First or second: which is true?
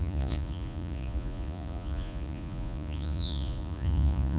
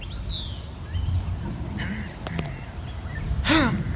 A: second